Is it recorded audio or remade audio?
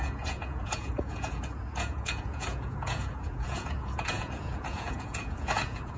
remade